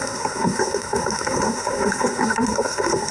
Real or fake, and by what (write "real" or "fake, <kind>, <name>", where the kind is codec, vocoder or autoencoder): fake, codec, SNAC